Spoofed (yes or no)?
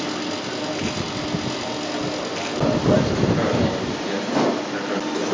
no